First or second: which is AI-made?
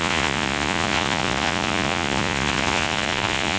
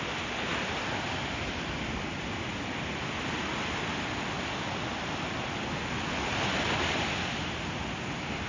first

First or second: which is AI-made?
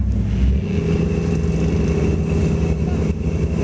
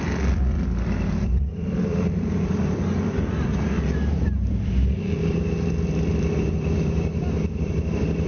second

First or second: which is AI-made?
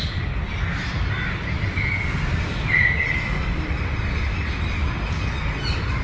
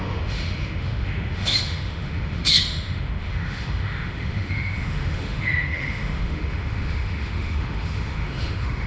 second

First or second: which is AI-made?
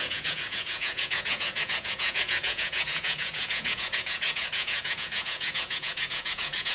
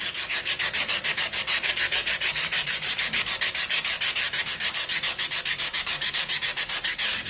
first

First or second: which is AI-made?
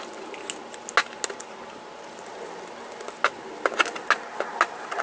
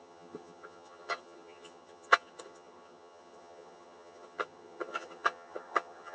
second